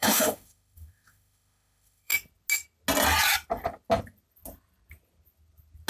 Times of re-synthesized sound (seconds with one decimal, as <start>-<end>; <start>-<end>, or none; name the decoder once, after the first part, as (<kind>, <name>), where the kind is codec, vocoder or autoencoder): 0.0-2.1 (autoencoder, DAC-VAE)